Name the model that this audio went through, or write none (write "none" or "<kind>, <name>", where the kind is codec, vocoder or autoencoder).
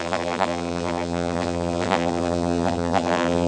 vocoder, BigVGAN v2